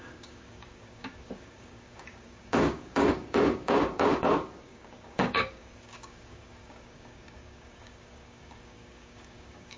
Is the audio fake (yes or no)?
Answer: yes